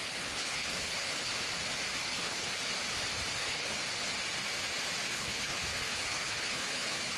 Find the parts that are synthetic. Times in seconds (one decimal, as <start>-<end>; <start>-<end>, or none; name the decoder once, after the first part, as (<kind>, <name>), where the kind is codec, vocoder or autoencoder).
0.0-1.3 (codec, HILCodec); 2.0-2.7; 3.3-3.8; 5.1-7.2